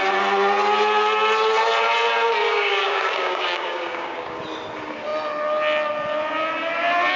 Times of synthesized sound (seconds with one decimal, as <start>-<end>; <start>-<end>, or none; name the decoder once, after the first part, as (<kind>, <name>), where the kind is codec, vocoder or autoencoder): 2.4-4.4 (codec, DAC)